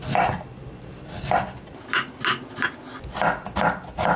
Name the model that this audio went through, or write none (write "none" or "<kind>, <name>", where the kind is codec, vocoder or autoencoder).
none